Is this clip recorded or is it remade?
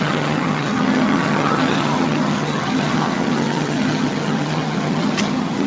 remade